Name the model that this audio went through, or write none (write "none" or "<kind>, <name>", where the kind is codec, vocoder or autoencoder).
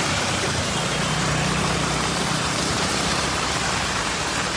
vocoder, BigVGAN v2